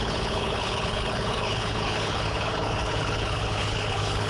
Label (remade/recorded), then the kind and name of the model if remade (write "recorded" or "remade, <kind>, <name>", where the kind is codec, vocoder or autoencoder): remade, codec, HILCodec